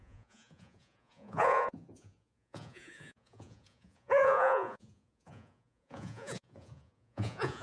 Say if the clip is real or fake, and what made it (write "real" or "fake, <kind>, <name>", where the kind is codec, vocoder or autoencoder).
fake, vocoder, Vocos